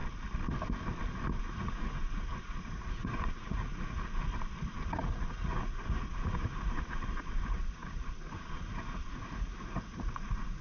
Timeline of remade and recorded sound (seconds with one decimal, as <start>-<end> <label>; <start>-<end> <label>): 0.0-1.4 recorded; 1.4-4.2 remade; 4.2-4.7 recorded; 4.7-10.6 remade